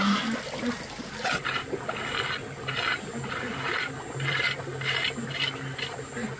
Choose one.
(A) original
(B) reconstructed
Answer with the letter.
A